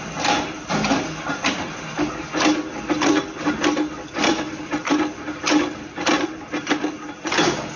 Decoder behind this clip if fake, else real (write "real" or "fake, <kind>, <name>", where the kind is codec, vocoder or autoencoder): real